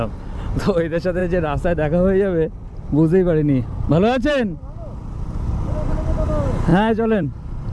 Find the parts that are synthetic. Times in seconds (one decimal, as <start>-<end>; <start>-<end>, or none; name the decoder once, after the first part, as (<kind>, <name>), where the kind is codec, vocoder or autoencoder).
6.7-7.7 (vocoder, BigVGAN v2)